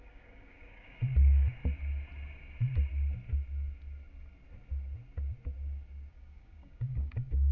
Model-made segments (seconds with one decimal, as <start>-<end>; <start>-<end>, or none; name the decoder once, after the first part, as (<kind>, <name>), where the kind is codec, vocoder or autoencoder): 0.0-1.6 (codec, DAC); 6.1-7.5